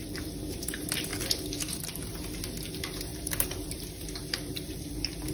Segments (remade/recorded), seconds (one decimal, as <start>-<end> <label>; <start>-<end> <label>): 0.0-5.3 remade

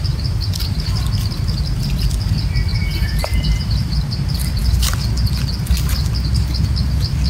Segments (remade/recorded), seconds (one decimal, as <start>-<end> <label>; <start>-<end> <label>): 0.0-2.7 recorded; 2.7-4.0 remade; 4.0-7.3 recorded

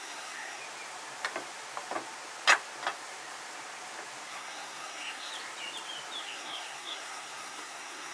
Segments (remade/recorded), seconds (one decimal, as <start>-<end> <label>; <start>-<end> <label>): 0.0-0.6 remade; 0.6-4.3 recorded; 4.3-5.3 remade; 5.3-6.2 recorded; 6.2-8.1 remade

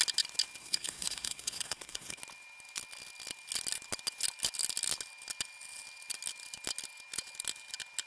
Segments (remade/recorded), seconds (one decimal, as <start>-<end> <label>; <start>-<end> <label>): 0.0-0.6 recorded; 0.6-2.2 remade; 2.2-8.1 recorded

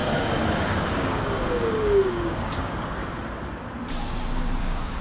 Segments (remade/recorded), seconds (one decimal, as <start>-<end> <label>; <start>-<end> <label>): 0.0-0.6 recorded; 0.6-3.0 remade; 3.0-4.6 recorded; 4.6-5.0 remade

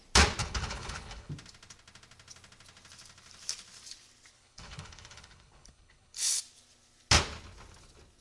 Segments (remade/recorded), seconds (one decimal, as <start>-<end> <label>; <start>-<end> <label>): 0.0-0.4 recorded; 0.4-1.3 remade; 1.3-4.3 recorded; 4.3-6.4 remade; 6.4-8.2 recorded